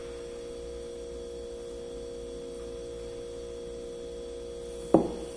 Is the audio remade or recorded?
recorded